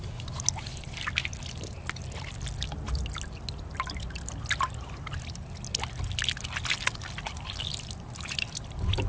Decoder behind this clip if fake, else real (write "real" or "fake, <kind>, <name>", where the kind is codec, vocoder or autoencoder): real